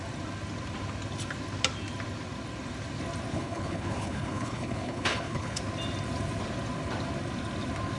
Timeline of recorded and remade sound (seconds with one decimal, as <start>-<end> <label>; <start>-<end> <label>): 0.0-3.3 recorded; 3.3-5.6 remade; 5.6-8.0 recorded